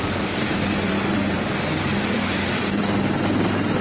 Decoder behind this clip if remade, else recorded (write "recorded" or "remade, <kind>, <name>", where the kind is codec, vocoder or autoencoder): remade, vocoder, BigVGAN v2